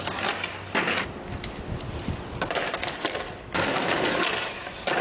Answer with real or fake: real